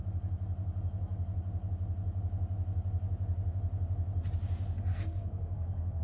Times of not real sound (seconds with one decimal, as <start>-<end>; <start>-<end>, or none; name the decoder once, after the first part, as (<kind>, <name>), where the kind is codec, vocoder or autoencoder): 4.9-6.0 (codec, SNAC)